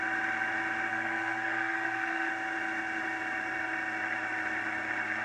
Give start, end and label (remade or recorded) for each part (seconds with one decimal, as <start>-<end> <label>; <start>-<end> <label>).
0.0-0.9 recorded; 0.9-2.3 remade; 2.3-5.2 recorded